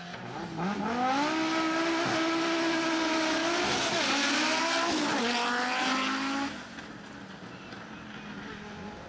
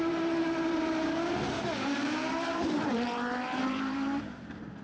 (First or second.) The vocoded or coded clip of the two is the second